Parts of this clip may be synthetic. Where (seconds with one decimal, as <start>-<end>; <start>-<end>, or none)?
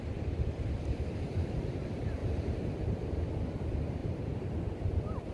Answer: 2.2-3.2; 4.0-4.7